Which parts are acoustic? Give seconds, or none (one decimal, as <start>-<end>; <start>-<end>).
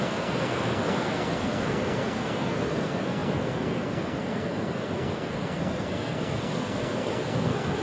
none